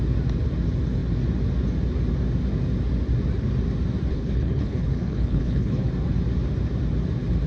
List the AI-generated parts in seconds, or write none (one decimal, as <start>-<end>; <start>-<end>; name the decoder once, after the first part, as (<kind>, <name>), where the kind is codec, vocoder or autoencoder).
4.1-5.8 (codec, HILCodec)